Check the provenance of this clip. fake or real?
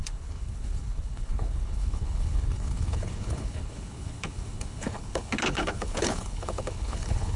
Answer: fake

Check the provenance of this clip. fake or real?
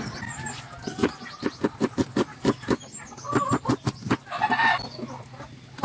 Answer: real